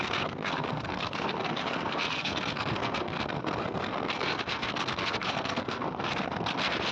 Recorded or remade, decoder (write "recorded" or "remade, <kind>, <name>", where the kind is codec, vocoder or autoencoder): remade, codec, SNAC